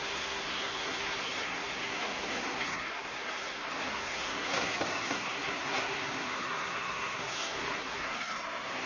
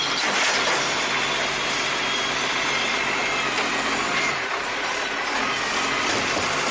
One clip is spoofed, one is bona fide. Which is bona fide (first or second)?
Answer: second